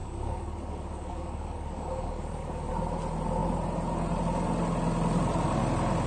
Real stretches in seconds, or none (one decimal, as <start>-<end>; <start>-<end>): 2.7-6.1